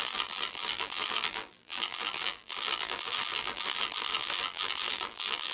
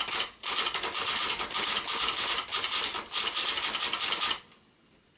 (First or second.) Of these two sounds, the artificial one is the first